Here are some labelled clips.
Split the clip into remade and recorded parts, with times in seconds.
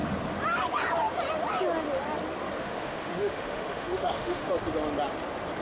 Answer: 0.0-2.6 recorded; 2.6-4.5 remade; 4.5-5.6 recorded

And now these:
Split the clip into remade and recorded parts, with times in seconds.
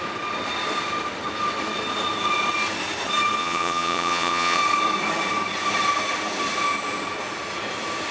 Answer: 0.0-3.4 recorded; 3.4-4.6 remade; 4.6-8.1 recorded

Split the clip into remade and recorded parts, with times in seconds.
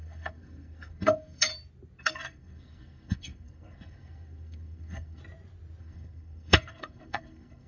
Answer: 0.0-1.5 remade; 1.5-2.0 recorded; 2.0-5.2 remade; 5.2-5.8 recorded; 5.8-7.7 remade